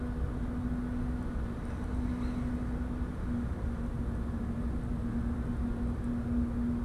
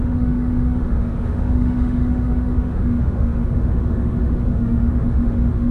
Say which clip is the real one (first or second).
first